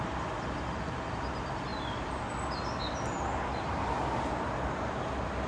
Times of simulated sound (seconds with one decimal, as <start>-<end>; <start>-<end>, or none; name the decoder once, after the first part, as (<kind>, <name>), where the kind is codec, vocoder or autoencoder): none